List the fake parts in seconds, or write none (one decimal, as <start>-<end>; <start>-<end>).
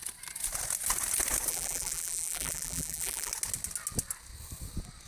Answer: 1.5-3.3